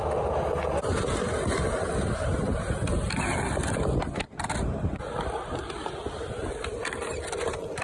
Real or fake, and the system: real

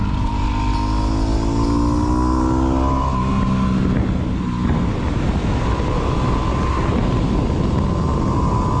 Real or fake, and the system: real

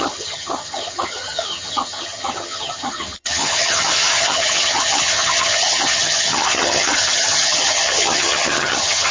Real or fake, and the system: fake, vocoder, HiFi-GAN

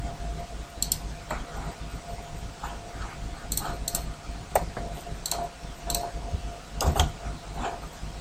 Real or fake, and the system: real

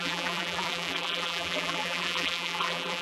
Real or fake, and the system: fake, vocoder, BigVGAN v2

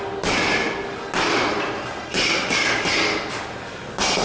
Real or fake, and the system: real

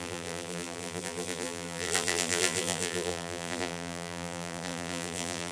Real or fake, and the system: fake, vocoder, BigVGAN v2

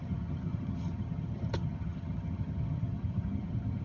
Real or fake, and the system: fake, vocoder, HiFi-GAN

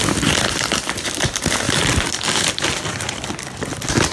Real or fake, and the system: real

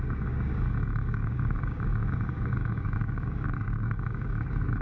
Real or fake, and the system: fake, codec, DAC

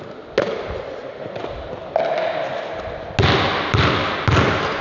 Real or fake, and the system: real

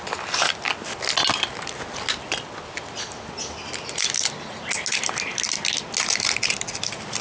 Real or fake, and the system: real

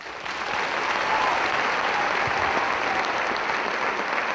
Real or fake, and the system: real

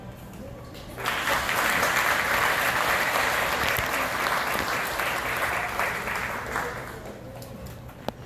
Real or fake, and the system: real